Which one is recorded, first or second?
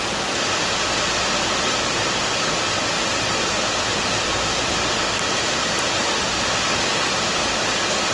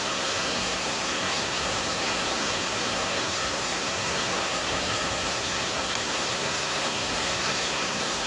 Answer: first